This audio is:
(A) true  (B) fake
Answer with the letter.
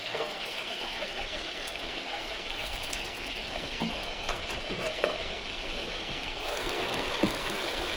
B